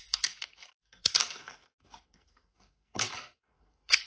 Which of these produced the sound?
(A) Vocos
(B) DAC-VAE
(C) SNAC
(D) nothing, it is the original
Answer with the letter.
C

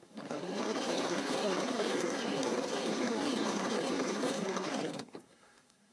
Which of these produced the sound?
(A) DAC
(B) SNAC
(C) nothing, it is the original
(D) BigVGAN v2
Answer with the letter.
B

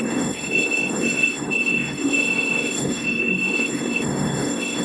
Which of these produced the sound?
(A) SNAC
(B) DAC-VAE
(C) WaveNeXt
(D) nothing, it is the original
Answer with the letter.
A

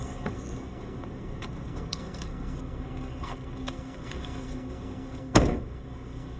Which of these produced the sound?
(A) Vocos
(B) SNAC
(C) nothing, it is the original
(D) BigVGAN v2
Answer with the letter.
B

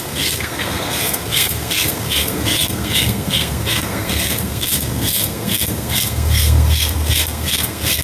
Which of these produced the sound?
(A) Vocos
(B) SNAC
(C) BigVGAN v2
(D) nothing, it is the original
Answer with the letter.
B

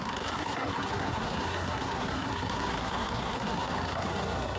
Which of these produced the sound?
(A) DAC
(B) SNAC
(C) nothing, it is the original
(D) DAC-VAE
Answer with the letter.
B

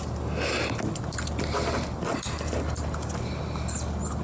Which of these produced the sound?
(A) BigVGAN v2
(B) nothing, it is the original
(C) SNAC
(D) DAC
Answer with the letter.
B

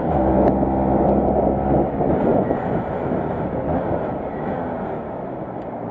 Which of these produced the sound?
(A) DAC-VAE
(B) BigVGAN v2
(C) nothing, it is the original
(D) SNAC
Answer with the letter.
C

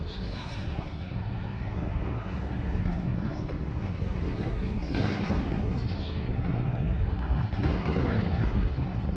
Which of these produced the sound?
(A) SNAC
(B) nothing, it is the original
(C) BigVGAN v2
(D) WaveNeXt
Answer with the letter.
A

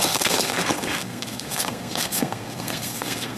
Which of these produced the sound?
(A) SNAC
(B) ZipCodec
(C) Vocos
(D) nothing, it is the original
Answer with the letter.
A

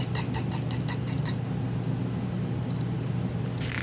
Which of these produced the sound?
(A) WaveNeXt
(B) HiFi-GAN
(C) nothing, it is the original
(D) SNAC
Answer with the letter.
C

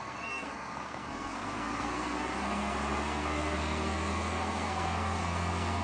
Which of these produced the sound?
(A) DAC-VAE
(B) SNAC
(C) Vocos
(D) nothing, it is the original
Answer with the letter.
B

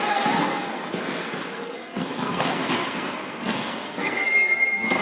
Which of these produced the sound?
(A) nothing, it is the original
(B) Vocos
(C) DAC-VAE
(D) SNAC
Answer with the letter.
D